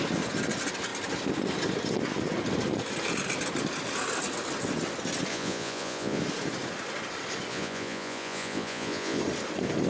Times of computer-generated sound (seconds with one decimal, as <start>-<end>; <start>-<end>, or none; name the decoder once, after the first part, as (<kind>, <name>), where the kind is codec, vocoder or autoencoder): 5.3-6.2 (vocoder, Vocos); 7.5-9.2